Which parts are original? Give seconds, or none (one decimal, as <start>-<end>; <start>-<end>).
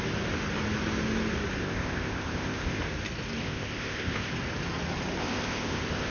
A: 0.0-1.6; 2.8-3.4; 4.3-5.2